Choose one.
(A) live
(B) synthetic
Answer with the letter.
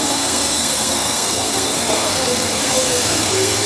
B